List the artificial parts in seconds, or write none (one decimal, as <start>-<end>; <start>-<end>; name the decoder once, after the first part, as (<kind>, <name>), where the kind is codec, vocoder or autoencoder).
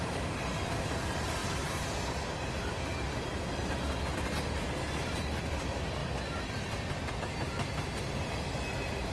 none